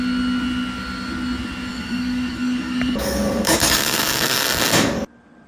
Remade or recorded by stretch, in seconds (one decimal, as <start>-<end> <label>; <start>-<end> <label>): 0.0-1.7 recorded; 1.7-5.0 remade; 5.0-5.5 recorded